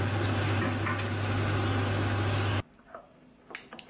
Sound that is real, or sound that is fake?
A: real